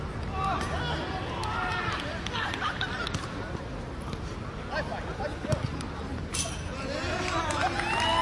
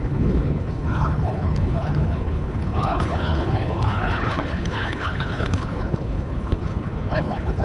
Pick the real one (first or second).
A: first